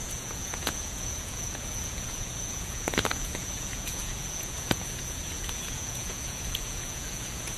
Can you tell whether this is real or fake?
fake